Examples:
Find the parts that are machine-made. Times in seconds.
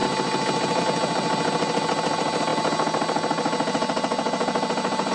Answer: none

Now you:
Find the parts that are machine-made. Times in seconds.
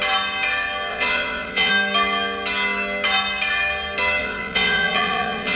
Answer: 0.9-1.7; 4.2-5.6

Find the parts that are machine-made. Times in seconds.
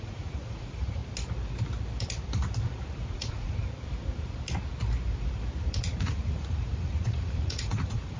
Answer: 0.0-1.0; 3.1-3.6; 5.8-8.2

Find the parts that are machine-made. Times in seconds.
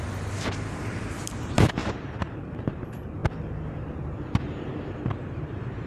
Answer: 0.0-3.2; 4.4-5.9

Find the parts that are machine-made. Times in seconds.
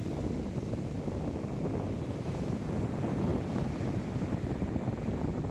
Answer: none